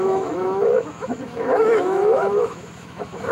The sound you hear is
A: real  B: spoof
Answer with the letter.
B